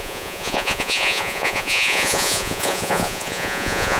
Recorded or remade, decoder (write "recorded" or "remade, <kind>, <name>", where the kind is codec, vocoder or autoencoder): remade, vocoder, Vocos